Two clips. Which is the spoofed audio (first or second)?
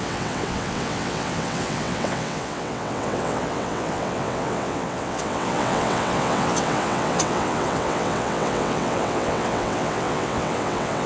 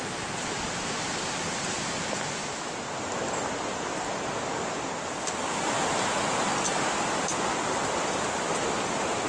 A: first